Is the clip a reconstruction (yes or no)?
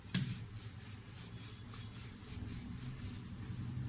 no